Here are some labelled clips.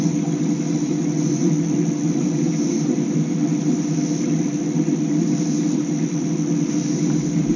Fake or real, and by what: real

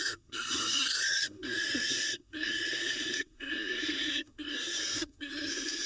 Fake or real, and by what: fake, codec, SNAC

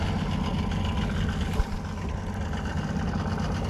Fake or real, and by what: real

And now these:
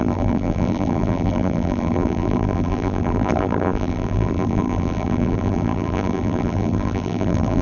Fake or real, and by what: fake, vocoder, BigVGAN v2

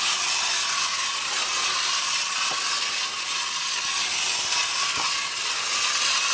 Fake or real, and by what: real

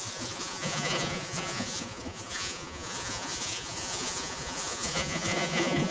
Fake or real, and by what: fake, vocoder, Vocos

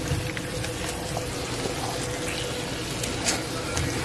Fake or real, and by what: real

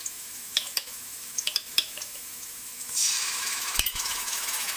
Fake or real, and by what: fake, autoencoder, DAC-VAE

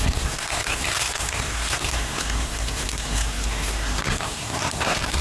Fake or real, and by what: fake, codec, SNAC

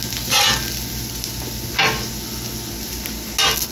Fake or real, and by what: real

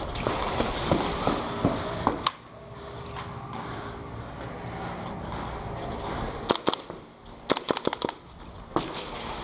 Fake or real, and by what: real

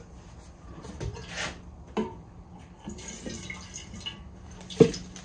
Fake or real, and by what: real